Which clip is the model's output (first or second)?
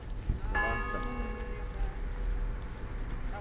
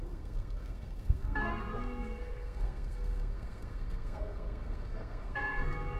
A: second